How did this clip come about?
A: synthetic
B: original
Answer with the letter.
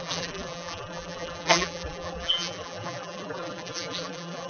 A